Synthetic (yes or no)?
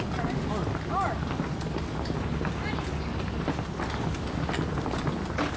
no